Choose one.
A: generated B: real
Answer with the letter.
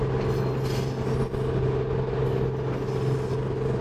B